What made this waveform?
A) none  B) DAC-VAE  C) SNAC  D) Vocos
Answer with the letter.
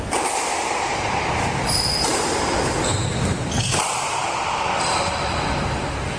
A